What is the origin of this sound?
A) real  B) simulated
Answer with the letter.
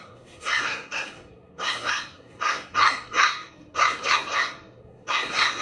B